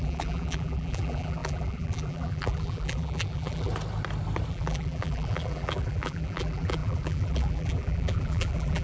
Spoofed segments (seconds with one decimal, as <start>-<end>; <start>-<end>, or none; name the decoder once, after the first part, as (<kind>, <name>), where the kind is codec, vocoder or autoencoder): 0.0-3.7 (vocoder, BigVGAN v2); 4.5-8.8